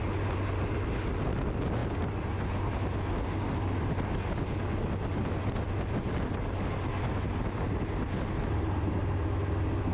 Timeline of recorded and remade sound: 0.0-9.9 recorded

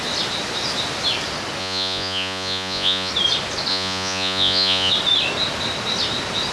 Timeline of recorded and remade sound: 0.0-1.6 recorded; 1.6-3.1 remade; 3.1-3.7 recorded; 3.7-4.9 remade; 4.9-6.5 recorded

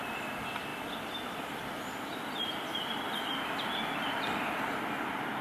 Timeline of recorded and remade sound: 0.0-0.7 recorded; 0.7-3.7 remade; 3.7-5.4 recorded

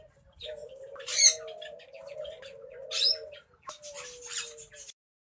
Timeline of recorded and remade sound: 0.0-5.2 recorded